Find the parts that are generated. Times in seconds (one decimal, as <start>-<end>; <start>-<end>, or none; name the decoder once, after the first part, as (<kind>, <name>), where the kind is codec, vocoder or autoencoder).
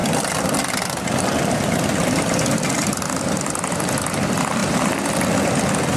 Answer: none